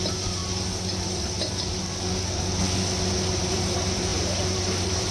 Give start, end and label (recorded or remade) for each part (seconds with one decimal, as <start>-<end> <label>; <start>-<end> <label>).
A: 0.0-0.4 remade; 0.4-3.5 recorded; 3.5-5.1 remade